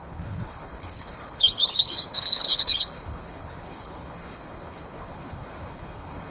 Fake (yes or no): yes